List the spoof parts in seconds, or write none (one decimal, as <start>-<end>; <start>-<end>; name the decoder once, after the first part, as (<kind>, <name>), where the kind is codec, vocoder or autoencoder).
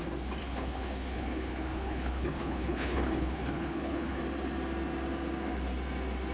0.4-4.2 (codec, HILCodec)